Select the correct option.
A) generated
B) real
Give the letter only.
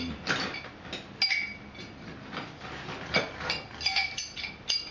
B